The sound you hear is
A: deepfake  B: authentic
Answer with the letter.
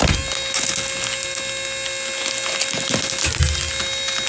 B